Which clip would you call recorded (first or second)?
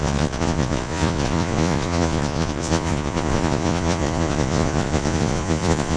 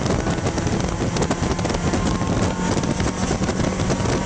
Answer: second